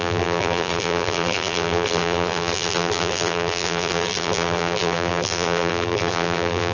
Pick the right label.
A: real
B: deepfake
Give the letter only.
B